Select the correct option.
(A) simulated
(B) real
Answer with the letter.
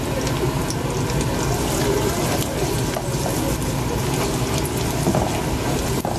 B